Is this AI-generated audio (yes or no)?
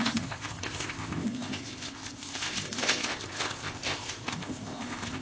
yes